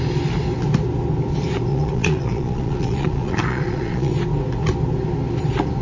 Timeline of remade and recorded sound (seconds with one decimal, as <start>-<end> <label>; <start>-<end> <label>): 0.0-1.7 recorded; 1.7-4.1 remade; 4.1-5.8 recorded